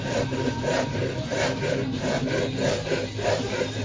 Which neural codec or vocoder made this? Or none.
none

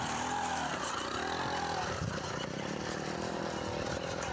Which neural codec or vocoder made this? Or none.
vocoder, BigVGAN v2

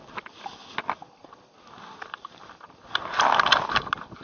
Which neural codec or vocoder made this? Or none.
none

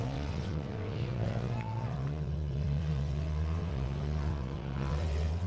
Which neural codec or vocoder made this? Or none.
vocoder, WaveNeXt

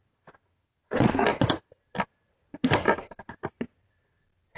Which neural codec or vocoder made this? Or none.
none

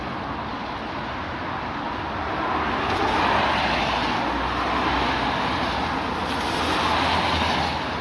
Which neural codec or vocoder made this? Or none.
none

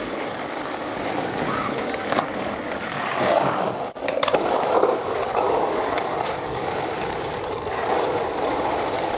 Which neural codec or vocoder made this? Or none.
codec, DAC